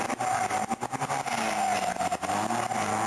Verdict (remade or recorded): recorded